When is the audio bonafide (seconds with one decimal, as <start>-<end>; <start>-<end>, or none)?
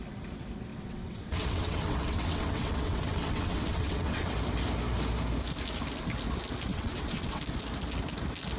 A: 0.0-0.7; 4.3-6.7; 7.4-8.6